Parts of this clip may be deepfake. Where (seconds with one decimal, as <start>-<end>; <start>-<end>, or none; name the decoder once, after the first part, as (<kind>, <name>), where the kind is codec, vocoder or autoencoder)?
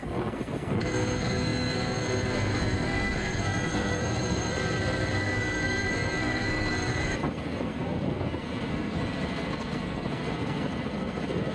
0.0-11.5 (codec, SNAC)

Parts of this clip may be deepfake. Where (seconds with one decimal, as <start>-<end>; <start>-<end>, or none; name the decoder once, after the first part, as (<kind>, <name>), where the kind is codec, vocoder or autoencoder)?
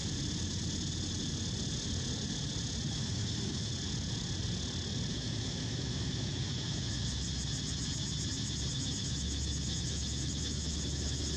2.9-3.7 (autoencoder, DAC-VAE); 5.1-7.3; 8.7-11.4